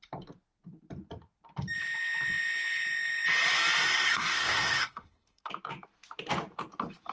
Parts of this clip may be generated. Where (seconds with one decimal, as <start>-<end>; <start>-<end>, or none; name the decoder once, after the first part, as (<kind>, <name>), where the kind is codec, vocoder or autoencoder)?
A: 3.9-5.5 (codec, SNAC)